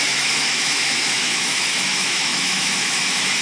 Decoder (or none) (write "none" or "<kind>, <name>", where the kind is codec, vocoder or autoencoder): autoencoder, DAC-VAE